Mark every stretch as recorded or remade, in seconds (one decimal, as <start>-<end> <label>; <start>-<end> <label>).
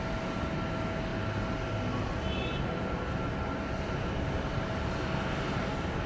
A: 0.0-6.1 recorded